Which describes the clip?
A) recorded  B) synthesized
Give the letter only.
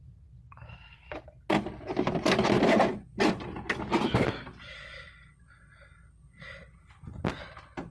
A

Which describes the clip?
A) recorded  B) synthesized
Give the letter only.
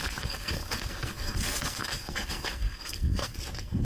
B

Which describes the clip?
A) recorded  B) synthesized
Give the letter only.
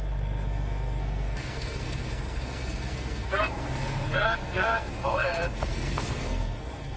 B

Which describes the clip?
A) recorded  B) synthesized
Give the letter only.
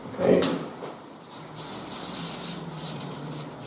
A